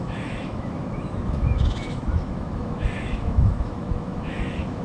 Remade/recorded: remade